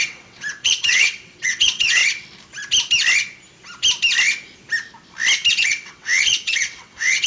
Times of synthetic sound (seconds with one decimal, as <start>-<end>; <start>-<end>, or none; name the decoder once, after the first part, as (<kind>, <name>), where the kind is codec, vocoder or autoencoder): 0.0-2.0 (vocoder, WaveNeXt); 5.5-7.3